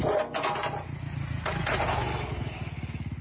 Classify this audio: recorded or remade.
recorded